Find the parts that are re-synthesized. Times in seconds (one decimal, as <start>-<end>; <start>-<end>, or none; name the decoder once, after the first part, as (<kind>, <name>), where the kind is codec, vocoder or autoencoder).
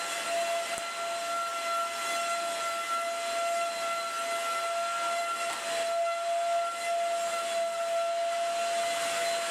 none